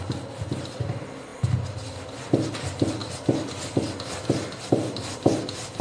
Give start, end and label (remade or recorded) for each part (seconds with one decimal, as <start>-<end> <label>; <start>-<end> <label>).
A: 0.0-5.8 recorded